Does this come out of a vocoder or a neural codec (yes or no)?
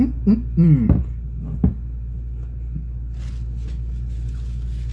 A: no